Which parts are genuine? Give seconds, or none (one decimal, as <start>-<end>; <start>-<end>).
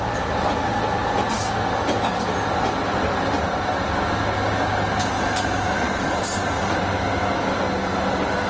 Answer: 0.0-8.5